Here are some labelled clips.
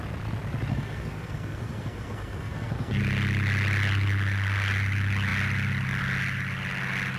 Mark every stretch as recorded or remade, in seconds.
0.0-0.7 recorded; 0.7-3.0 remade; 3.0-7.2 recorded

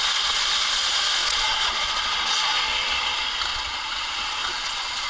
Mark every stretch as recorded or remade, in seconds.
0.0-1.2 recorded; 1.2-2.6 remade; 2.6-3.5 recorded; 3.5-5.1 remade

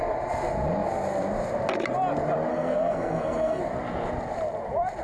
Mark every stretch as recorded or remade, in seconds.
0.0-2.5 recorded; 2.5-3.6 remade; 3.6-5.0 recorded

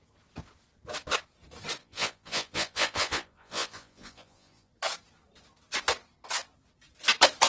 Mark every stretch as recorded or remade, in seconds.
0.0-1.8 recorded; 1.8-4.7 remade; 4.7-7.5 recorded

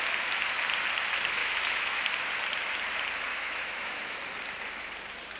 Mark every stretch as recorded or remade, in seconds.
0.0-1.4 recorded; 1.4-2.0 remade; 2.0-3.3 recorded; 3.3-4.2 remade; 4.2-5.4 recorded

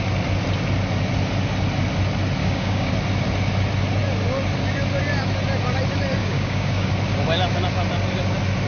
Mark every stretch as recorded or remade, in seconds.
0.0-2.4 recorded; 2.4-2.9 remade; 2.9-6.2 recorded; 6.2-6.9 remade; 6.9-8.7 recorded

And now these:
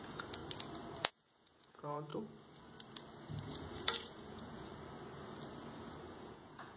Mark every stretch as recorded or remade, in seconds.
0.0-0.4 remade; 0.4-1.0 recorded; 1.0-2.1 remade; 2.1-3.4 recorded; 3.4-4.7 remade; 4.7-6.0 recorded; 6.0-6.8 remade